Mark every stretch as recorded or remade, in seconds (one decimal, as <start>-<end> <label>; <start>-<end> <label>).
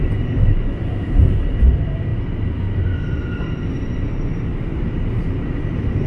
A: 0.0-6.1 recorded